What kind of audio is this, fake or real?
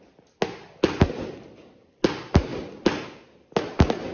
real